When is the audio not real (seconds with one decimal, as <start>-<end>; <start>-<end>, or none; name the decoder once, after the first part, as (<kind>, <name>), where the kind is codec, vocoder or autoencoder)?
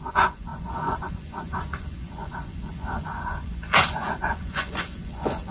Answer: 0.0-5.5 (vocoder, Vocos)